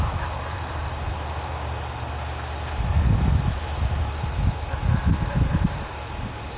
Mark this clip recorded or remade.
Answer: recorded